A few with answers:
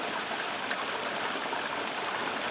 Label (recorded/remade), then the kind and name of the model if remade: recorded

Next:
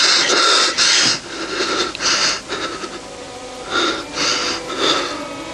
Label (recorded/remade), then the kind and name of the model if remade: recorded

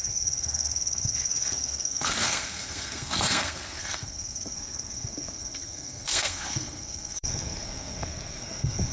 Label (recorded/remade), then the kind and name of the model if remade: remade, codec, SNAC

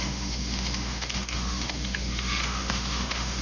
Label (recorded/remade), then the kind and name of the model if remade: remade, autoencoder, DAC-VAE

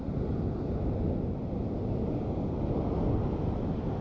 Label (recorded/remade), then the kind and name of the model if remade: recorded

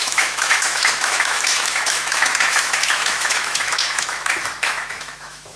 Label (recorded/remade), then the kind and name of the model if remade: remade, autoencoder, DAC-VAE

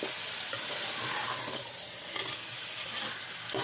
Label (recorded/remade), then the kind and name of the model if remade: recorded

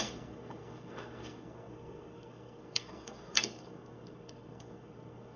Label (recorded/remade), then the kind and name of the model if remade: remade, codec, SNAC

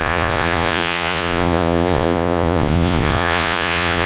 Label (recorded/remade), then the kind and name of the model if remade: remade, vocoder, Vocos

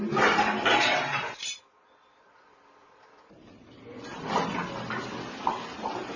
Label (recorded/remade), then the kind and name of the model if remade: recorded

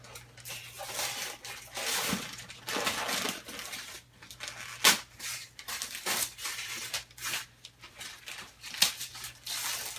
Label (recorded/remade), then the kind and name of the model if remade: recorded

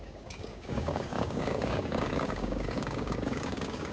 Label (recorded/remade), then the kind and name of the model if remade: remade, codec, DAC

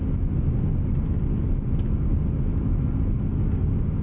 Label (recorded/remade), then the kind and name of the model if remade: recorded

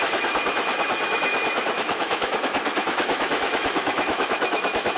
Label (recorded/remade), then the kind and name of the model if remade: remade, autoencoder, DAC-VAE